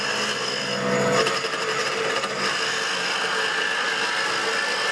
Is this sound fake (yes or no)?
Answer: no